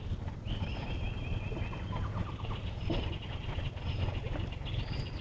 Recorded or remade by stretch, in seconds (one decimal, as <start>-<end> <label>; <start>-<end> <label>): 0.0-5.2 recorded